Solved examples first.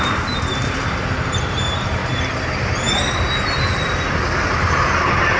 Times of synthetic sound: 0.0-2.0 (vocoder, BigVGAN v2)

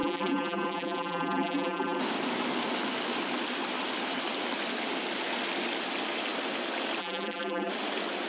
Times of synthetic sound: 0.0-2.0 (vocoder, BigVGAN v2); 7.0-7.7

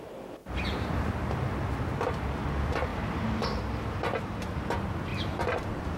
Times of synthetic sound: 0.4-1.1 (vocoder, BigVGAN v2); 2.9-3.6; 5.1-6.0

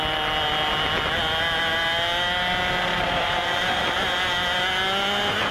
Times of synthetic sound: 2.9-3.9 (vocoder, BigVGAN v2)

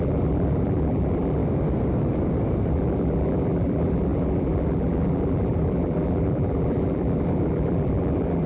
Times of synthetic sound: 0.0-1.4 (vocoder, BigVGAN v2); 2.7-8.5